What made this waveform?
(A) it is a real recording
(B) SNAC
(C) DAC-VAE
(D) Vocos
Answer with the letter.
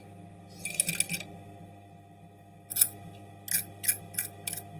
A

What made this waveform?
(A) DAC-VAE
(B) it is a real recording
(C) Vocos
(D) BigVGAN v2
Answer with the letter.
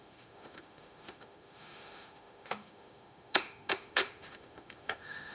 A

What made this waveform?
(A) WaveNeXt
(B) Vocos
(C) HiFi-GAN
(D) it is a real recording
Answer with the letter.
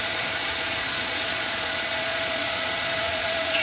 B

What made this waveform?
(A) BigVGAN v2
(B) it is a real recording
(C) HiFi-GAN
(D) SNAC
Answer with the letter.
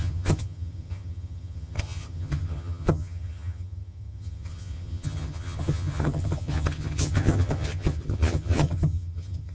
C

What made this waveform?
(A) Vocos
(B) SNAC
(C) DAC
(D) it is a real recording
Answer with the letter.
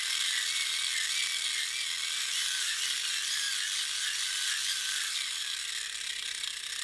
D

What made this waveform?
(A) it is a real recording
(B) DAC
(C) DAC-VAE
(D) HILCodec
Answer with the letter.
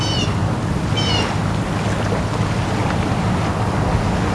A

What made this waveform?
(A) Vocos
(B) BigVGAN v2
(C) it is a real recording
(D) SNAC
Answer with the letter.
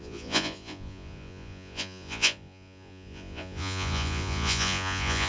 A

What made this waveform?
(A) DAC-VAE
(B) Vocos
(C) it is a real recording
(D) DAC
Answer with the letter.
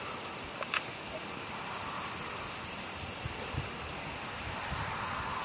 C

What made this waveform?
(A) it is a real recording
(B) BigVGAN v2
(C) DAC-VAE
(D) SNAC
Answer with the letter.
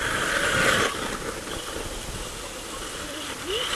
A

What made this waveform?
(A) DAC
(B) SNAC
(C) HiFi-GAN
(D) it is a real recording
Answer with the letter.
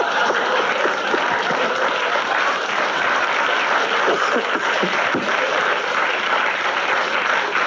D